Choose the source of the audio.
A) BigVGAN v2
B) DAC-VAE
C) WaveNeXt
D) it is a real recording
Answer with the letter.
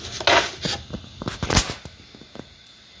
D